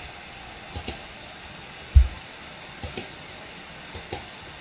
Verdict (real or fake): real